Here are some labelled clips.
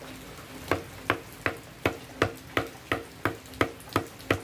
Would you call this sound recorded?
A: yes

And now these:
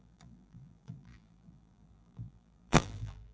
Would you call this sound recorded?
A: no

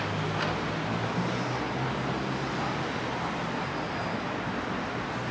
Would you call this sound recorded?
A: yes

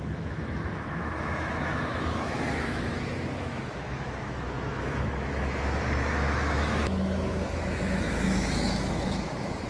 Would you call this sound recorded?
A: no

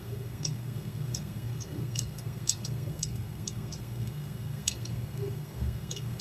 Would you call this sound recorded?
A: no